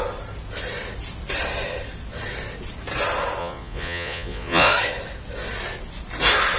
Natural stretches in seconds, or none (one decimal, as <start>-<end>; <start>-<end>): 0.0-3.4; 4.7-6.6